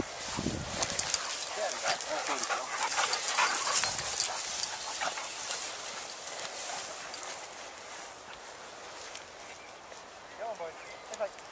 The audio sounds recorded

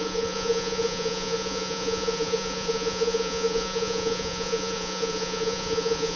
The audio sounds remade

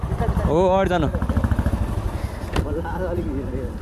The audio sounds recorded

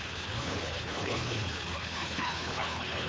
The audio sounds remade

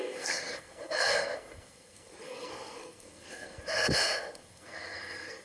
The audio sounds remade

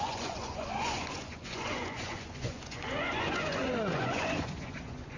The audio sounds remade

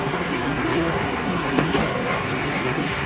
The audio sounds remade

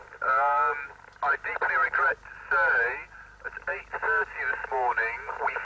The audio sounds recorded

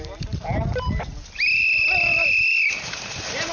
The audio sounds remade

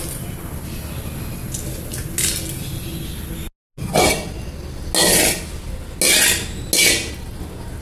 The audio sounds recorded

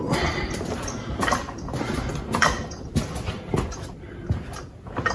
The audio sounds remade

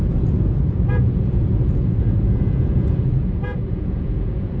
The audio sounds remade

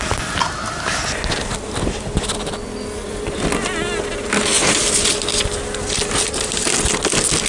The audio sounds recorded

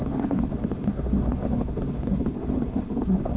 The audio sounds remade